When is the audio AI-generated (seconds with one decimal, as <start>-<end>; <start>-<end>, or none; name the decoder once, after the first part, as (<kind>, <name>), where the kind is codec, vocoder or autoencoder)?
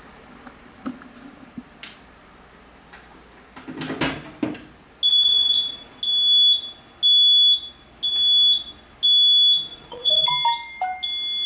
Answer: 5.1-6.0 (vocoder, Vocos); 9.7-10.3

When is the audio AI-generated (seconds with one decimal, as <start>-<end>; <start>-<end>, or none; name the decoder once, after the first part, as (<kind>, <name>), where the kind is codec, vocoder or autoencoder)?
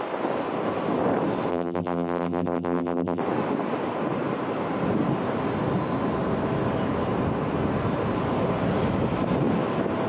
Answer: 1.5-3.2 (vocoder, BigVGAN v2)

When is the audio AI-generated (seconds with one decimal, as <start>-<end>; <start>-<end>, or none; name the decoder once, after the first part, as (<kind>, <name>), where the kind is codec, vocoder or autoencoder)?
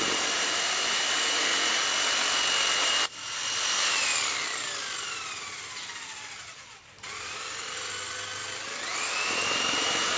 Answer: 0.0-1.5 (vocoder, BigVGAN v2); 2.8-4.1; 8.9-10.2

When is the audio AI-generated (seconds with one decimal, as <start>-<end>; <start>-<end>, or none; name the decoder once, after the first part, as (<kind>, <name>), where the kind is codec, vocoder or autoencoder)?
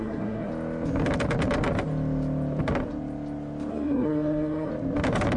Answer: 0.0-0.5 (codec, SNAC); 3.7-4.7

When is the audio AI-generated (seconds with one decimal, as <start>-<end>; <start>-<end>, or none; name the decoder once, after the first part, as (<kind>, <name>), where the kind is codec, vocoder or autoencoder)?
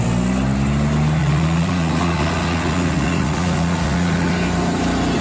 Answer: 1.2-4.3 (vocoder, Vocos)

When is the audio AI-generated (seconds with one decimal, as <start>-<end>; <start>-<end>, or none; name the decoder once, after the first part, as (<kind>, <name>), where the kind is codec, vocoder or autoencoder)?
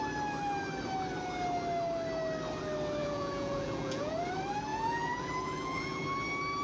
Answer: 3.0-4.2 (vocoder, Vocos); 4.7-6.0